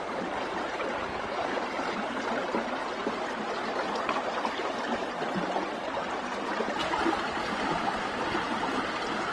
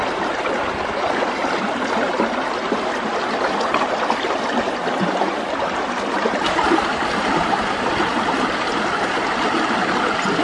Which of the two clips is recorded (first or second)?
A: first